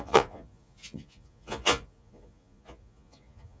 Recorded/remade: remade